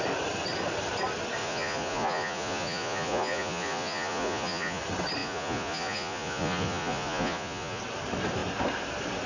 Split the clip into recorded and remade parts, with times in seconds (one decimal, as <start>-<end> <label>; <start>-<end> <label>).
0.0-1.4 recorded; 1.4-4.8 remade; 4.8-5.2 recorded; 5.2-7.8 remade; 7.8-9.3 recorded